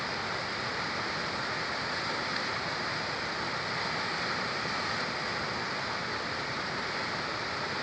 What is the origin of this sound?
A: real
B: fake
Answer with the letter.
A